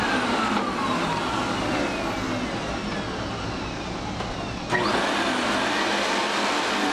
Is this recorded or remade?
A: recorded